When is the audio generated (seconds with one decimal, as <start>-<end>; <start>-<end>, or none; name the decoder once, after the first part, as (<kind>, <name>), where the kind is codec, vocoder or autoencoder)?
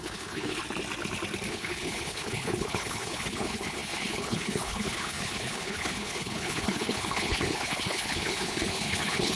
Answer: 0.0-0.6 (codec, HILCodec); 1.5-9.4